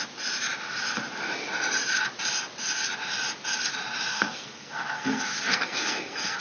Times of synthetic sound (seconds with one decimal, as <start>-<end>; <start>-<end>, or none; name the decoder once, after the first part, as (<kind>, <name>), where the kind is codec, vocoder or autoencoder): 4.1-6.4 (codec, SNAC)